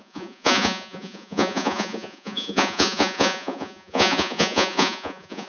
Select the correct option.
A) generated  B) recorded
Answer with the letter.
A